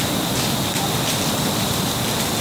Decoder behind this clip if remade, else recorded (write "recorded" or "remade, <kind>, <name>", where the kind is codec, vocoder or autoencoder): recorded